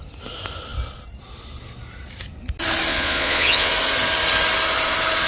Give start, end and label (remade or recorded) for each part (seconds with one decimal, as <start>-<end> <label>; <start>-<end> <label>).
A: 0.0-2.9 recorded; 2.9-3.7 remade; 3.7-5.3 recorded